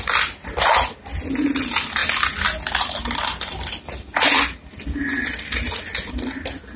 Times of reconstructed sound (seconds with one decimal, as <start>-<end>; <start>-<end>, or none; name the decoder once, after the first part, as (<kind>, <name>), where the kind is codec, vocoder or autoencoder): none